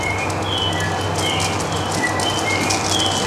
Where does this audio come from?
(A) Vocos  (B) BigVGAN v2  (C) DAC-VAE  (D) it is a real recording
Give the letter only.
D